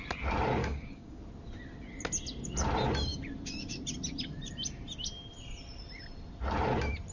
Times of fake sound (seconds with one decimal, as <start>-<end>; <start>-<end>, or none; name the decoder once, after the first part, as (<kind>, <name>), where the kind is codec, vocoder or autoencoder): 0.6-1.2 (codec, DAC)